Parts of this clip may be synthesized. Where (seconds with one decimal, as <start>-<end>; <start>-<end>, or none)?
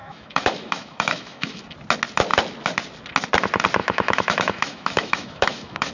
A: 0.0-1.6; 3.8-5.9